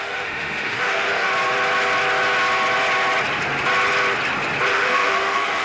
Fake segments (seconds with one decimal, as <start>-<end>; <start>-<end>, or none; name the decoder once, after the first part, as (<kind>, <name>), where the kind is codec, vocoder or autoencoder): 0.0-1.3 (autoencoder, DAC-VAE); 4.7-5.6